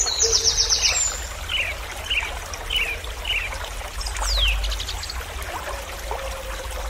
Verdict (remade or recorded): recorded